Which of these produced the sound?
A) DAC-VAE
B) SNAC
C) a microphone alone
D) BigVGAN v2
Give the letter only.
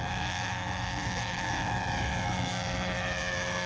A